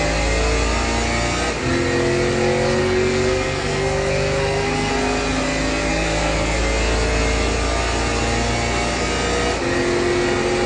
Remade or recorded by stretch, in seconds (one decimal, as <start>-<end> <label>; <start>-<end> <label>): 0.0-2.8 recorded; 2.8-4.9 remade; 4.9-5.9 recorded; 5.9-6.6 remade; 6.6-10.7 recorded